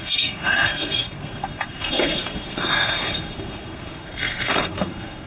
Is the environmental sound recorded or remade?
remade